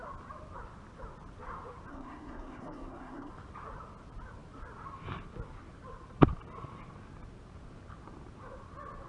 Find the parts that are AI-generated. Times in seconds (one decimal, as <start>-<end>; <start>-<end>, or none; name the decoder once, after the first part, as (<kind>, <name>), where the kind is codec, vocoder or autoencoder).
1.9-3.3 (codec, SNAC)